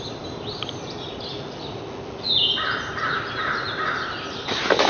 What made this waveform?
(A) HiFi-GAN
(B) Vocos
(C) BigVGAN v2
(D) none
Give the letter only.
D